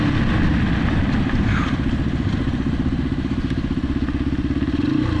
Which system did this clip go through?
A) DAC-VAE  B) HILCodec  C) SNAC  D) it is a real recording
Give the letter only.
D